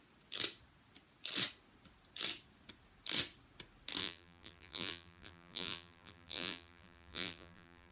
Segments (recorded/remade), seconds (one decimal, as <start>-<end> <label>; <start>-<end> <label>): 0.0-4.0 recorded; 4.0-7.9 remade